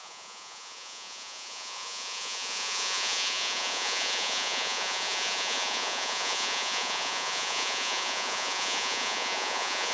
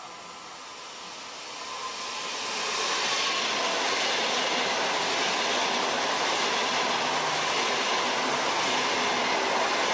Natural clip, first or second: second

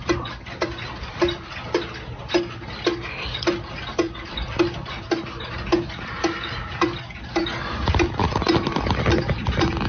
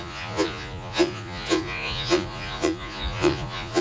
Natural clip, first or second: first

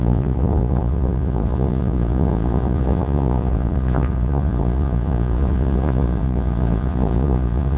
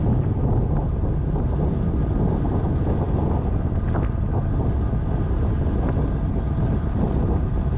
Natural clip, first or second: second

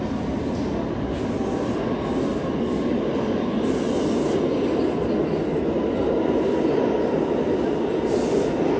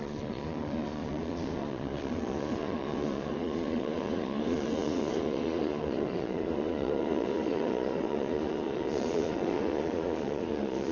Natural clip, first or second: first